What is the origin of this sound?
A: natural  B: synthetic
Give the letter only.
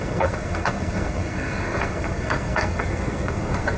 B